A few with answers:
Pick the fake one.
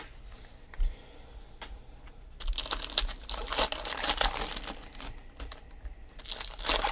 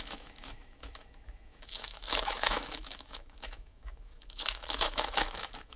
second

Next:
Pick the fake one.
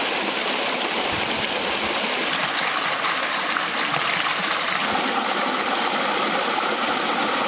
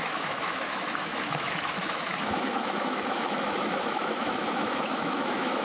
second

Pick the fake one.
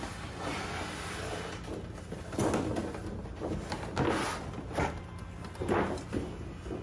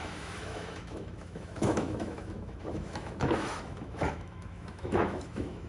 second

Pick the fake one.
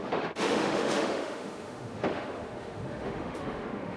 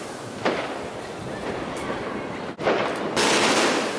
first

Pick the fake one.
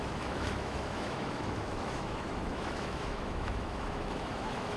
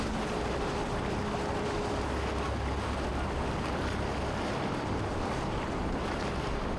first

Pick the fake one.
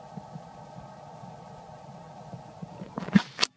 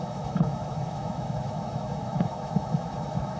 second